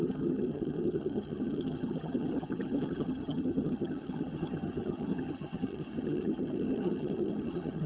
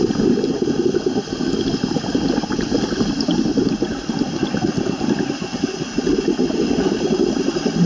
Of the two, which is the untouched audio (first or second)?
second